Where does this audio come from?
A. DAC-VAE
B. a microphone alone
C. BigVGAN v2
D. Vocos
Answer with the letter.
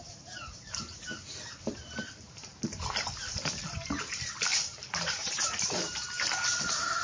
C